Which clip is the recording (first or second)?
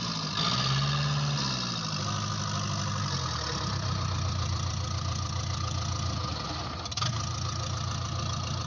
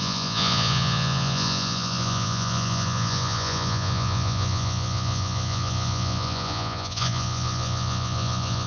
first